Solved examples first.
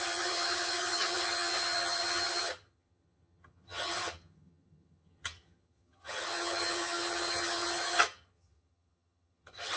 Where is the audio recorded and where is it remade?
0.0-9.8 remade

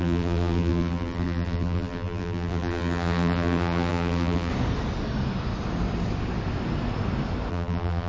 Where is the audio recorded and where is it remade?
0.0-4.5 remade; 4.5-7.5 recorded; 7.5-8.1 remade

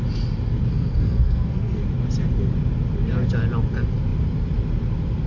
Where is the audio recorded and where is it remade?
0.0-0.7 recorded; 0.7-1.8 remade; 1.8-5.3 recorded

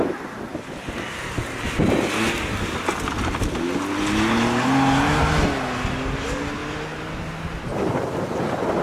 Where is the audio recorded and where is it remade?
0.0-8.8 recorded

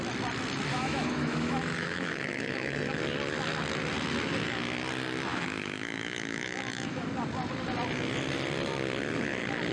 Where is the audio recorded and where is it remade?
0.0-0.7 recorded; 0.7-3.0 remade; 3.0-5.3 recorded; 5.3-7.1 remade; 7.1-9.7 recorded

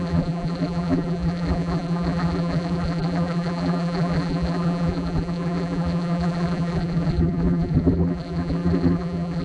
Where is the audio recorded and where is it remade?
0.0-9.4 remade

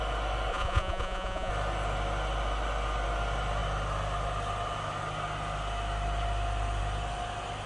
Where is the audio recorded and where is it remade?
0.0-0.5 recorded; 0.5-1.5 remade; 1.5-7.7 recorded